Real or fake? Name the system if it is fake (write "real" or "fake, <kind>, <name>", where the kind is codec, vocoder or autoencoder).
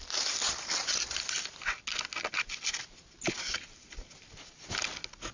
real